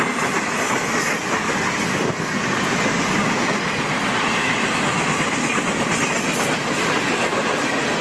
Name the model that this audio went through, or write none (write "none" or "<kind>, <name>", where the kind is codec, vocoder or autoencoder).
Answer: none